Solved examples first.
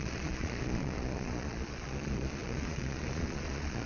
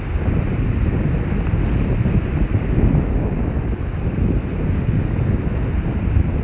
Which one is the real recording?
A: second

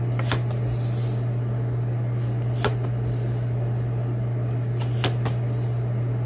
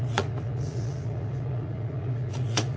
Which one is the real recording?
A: first